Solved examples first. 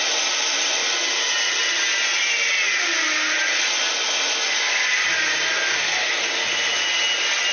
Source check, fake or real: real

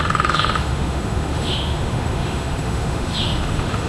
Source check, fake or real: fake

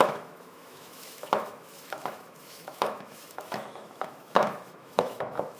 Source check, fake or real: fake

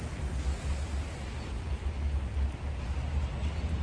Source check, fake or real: real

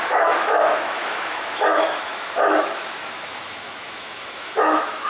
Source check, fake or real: fake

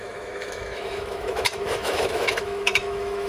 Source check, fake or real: fake